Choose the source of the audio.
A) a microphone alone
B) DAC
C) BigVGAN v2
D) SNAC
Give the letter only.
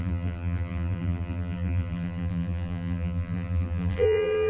C